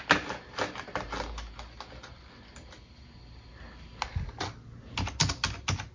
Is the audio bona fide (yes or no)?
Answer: yes